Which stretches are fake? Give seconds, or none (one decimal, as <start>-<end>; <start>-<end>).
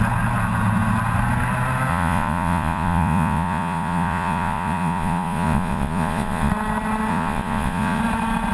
1.9-6.5; 7.1-8.0